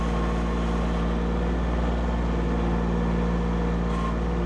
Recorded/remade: recorded